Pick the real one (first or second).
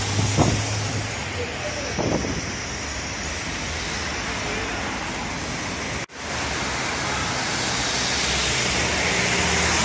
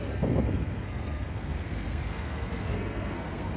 first